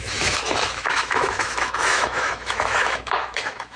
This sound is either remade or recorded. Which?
remade